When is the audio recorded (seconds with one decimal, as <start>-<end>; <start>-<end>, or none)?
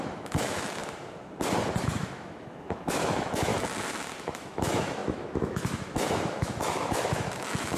0.8-1.8; 3.5-4.2